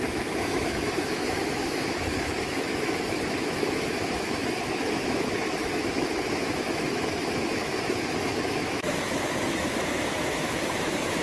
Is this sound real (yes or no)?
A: no